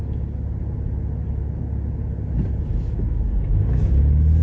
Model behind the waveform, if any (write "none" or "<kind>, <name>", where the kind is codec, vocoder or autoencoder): none